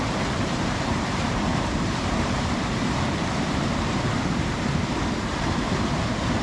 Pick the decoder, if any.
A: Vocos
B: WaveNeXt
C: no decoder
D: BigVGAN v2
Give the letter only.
D